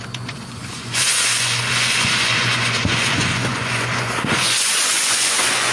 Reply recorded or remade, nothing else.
remade